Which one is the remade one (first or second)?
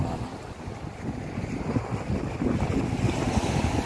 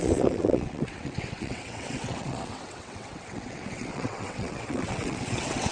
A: second